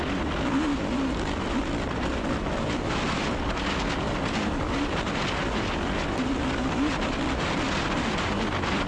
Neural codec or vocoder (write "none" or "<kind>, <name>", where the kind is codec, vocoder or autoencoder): none